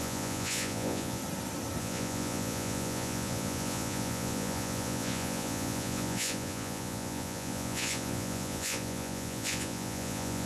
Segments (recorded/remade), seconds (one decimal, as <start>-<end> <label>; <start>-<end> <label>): 0.0-1.2 remade; 1.2-1.8 recorded; 1.8-10.5 remade